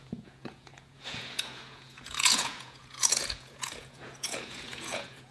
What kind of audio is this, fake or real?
fake